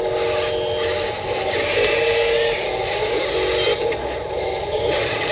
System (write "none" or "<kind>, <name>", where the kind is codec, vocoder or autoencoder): none